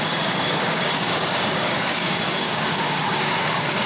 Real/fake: fake